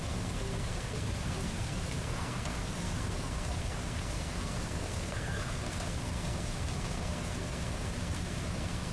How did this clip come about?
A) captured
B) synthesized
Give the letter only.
B